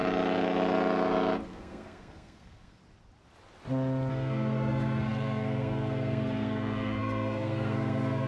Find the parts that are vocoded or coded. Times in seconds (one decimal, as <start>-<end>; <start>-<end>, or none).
1.5-2.8; 4.1-8.3